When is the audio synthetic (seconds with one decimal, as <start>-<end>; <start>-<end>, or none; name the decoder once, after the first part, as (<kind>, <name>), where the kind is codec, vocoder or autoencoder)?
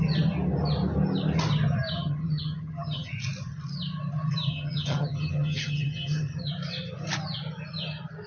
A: 1.9-3.1 (vocoder, HiFi-GAN); 4.5-6.5